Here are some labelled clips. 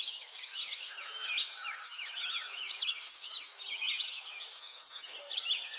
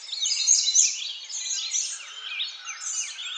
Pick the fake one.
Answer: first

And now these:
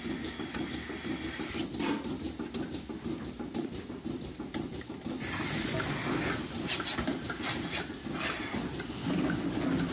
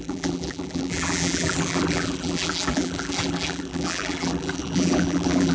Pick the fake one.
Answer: second